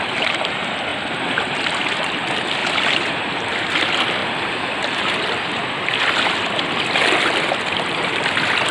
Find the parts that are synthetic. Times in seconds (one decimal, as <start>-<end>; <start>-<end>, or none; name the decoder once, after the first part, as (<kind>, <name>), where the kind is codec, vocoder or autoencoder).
2.6-3.5 (vocoder, BigVGAN v2); 4.2-5.6